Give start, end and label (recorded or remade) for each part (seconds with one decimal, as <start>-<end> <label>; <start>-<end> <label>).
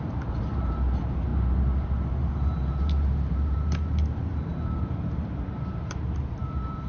0.0-6.9 remade